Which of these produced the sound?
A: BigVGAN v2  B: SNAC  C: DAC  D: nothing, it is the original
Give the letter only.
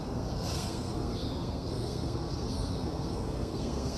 B